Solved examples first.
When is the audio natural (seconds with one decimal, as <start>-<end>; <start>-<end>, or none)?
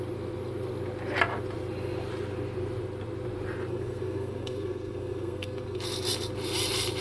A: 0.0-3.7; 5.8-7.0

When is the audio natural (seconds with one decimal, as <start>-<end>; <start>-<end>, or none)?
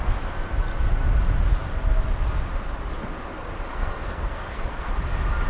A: 0.0-3.7; 4.9-5.5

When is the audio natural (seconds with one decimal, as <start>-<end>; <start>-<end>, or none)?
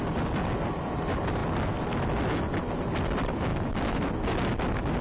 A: 0.0-5.0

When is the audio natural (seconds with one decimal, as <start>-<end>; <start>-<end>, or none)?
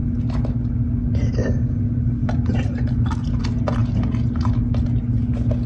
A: 0.0-5.7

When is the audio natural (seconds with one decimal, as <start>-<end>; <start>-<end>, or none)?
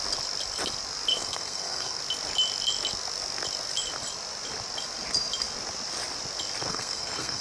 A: 0.0-1.1; 2.0-6.7